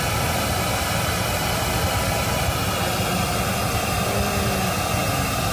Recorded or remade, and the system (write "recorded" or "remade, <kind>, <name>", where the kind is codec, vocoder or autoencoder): recorded